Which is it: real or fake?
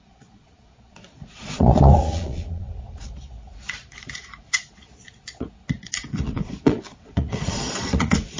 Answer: fake